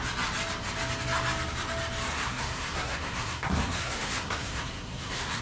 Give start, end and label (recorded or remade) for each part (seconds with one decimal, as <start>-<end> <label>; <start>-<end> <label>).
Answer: 0.0-2.1 recorded; 2.1-5.4 remade